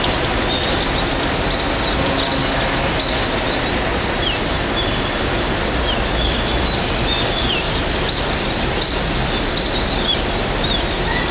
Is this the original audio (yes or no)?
yes